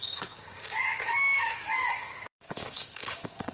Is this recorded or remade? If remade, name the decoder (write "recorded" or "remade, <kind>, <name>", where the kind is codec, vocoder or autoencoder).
remade, codec, DAC